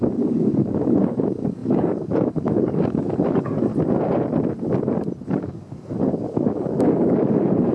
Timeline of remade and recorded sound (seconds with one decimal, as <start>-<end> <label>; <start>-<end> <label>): 0.0-3.7 remade; 3.7-5.4 recorded; 5.4-7.7 remade